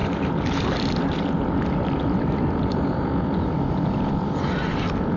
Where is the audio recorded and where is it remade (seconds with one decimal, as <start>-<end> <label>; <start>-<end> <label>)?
0.0-5.2 recorded